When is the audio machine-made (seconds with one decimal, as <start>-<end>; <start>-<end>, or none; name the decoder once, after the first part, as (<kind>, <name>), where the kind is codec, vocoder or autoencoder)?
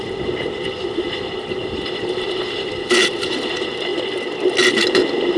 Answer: 0.0-3.9 (vocoder, BigVGAN v2); 4.7-5.4